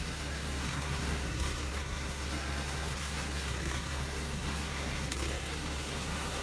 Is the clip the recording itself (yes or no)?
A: no